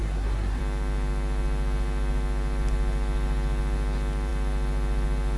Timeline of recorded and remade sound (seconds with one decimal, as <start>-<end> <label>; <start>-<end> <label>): 0.0-0.6 remade; 0.6-5.4 recorded